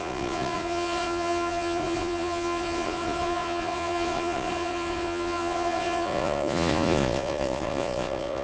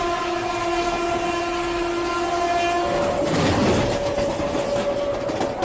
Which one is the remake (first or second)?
first